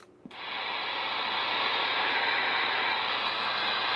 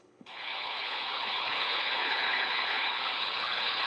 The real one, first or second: first